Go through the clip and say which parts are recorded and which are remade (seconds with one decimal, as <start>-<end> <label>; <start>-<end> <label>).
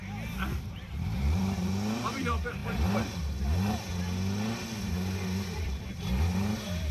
0.0-3.9 remade; 3.9-4.8 recorded; 4.8-6.9 remade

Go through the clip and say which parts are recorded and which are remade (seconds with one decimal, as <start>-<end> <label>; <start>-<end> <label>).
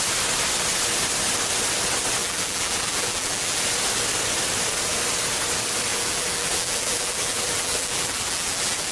0.0-2.2 recorded; 2.2-3.6 remade; 3.6-5.9 recorded; 5.9-8.9 remade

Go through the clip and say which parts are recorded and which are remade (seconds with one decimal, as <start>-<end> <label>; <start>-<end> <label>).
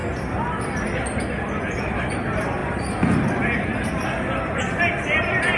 0.0-5.6 recorded